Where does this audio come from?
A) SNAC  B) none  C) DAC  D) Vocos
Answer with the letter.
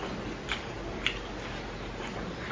B